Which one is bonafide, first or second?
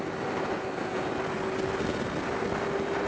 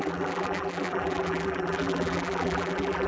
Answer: first